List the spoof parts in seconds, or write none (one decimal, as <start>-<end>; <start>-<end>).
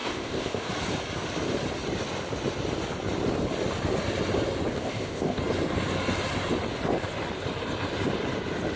0.0-0.7; 4.7-5.4